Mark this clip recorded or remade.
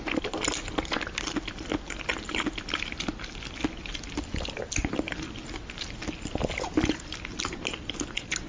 recorded